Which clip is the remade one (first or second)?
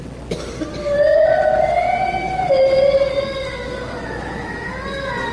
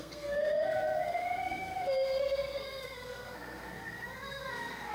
second